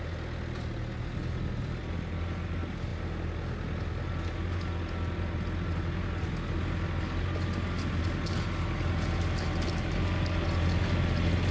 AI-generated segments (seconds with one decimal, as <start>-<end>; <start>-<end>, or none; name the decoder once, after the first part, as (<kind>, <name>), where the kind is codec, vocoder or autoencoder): none